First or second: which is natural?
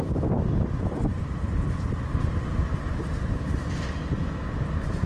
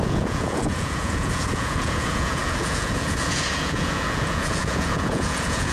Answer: first